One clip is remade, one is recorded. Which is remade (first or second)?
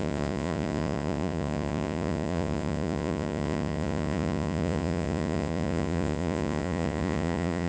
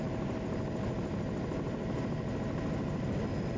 first